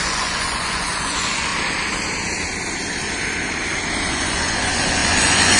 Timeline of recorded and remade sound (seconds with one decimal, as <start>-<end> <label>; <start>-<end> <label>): 0.0-1.5 remade; 1.5-4.1 recorded; 4.1-5.6 remade